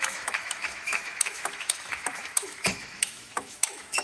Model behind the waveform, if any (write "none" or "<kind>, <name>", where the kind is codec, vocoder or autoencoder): autoencoder, DAC-VAE